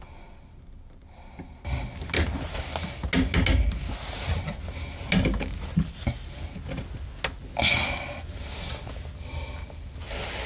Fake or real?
real